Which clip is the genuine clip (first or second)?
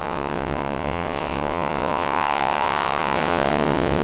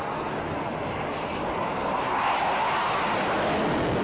second